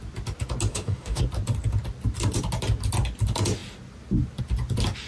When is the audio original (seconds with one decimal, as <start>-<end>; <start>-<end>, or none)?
0.0-0.7; 1.2-5.1